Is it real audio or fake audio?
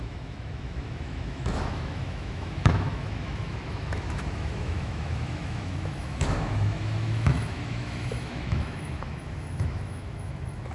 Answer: fake